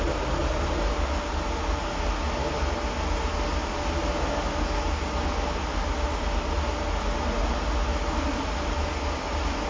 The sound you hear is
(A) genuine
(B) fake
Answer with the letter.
A